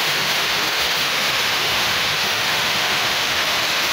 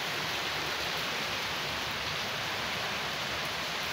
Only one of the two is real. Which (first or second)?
second